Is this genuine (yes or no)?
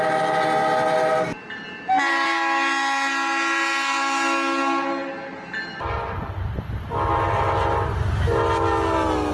yes